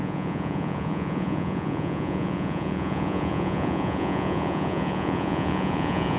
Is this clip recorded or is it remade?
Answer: remade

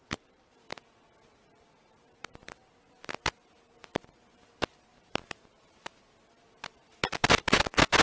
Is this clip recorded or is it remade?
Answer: recorded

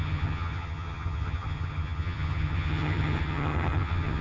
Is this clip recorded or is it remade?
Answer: remade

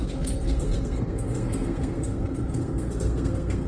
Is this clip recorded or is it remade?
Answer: remade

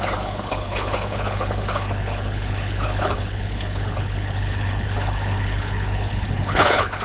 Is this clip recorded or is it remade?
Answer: remade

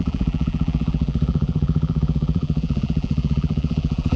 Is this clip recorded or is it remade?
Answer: remade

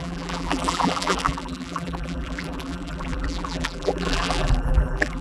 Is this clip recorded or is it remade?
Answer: remade